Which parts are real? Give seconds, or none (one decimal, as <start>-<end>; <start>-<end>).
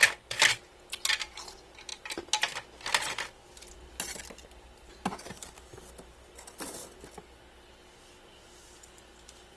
0.0-9.6